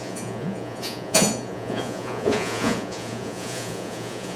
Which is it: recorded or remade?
remade